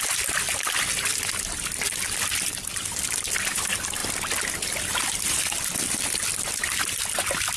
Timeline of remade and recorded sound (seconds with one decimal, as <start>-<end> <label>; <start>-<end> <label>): 0.0-7.6 recorded